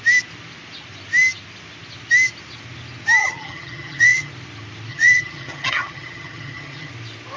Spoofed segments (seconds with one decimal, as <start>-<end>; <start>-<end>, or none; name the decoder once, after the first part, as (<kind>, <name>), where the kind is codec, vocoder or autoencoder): 3.2-4.3 (vocoder, HiFi-GAN); 4.9-6.9